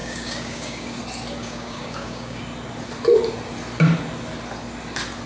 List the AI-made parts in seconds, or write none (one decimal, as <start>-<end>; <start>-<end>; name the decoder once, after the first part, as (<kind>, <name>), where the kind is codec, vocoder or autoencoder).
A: 0.0-1.0 (codec, DAC); 1.4-2.4